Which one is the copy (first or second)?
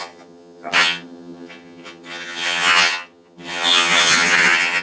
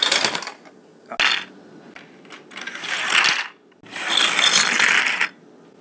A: first